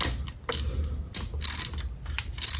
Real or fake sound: real